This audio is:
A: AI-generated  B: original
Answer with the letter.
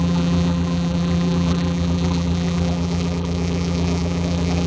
A